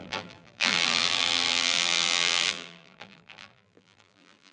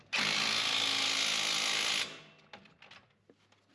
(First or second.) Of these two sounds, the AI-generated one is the first